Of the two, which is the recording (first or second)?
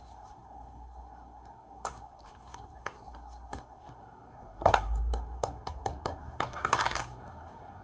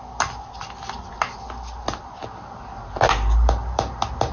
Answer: second